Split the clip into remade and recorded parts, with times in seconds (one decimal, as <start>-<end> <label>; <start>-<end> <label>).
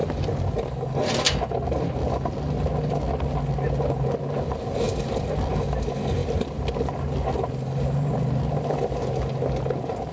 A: 0.0-10.1 recorded